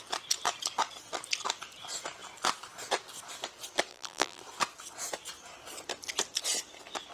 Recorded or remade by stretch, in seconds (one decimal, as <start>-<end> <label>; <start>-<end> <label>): 0.0-3.9 recorded; 3.9-4.4 remade; 4.4-7.1 recorded